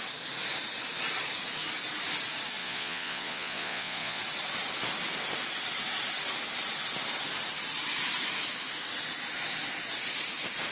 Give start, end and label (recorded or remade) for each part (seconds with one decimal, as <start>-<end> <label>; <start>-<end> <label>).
0.0-2.6 recorded; 2.6-4.2 remade; 4.2-10.7 recorded

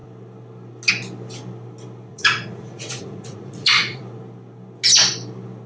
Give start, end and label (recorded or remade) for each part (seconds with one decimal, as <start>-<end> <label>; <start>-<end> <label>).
0.0-2.1 recorded; 2.1-4.0 remade; 4.0-5.7 recorded

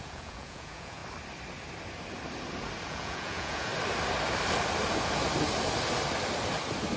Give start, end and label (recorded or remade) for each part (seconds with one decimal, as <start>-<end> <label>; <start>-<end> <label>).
0.0-1.0 remade; 1.0-2.9 recorded; 2.9-3.7 remade; 3.7-7.0 recorded

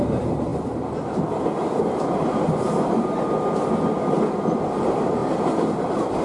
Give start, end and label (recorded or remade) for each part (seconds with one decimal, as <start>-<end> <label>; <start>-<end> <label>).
0.0-6.2 recorded

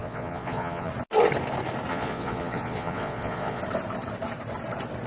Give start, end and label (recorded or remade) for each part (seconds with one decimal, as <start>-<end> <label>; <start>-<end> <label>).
0.0-0.9 remade; 0.9-1.9 recorded; 1.9-3.6 remade; 3.6-5.1 recorded

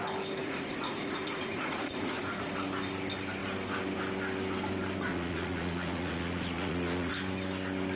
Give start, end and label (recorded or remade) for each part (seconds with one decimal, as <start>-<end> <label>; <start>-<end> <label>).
0.0-0.4 recorded; 0.4-2.5 remade; 2.5-5.1 recorded; 5.1-7.1 remade; 7.1-8.0 recorded